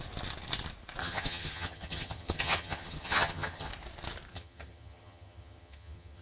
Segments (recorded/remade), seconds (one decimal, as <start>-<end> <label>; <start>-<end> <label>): 0.0-1.0 recorded; 1.0-3.7 remade; 3.7-4.3 recorded; 4.3-6.2 remade